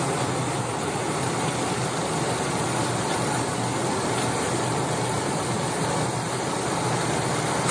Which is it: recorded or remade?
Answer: recorded